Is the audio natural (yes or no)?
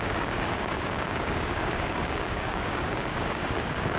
no